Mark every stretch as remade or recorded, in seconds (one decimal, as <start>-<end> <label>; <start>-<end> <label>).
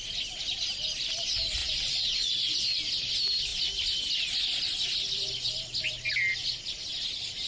0.0-1.6 recorded; 1.6-2.5 remade; 2.5-7.5 recorded